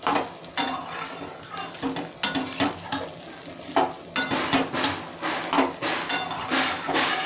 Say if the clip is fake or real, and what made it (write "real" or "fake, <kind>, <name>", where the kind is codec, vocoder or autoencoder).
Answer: real